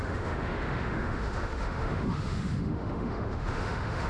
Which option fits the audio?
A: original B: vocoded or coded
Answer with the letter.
B